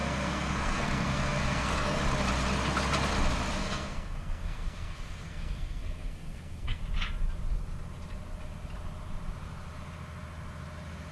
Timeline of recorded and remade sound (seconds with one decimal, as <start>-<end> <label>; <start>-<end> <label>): 0.0-2.0 remade; 2.0-3.6 recorded; 3.6-6.8 remade; 6.8-11.1 recorded